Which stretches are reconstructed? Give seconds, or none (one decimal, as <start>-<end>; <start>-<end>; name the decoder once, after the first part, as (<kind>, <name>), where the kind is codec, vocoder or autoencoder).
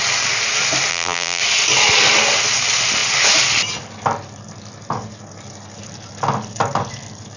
0.9-1.4 (vocoder, BigVGAN v2)